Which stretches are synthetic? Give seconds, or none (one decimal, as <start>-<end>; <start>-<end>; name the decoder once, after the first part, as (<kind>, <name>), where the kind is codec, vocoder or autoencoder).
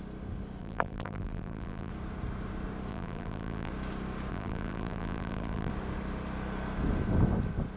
0.6-1.9 (vocoder, BigVGAN v2); 2.9-3.7; 4.3-5.7